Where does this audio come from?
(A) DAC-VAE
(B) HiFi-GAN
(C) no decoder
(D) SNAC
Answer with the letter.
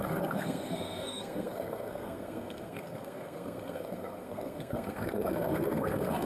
D